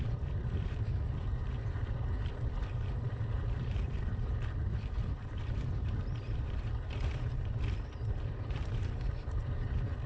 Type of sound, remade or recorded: remade